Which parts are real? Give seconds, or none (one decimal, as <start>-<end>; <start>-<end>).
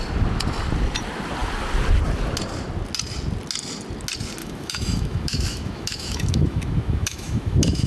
0.0-4.4